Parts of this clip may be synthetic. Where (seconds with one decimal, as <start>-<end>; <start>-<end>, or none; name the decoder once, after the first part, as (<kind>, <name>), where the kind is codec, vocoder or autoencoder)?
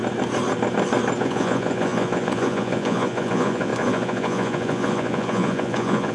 1.2-6.1 (vocoder, Vocos)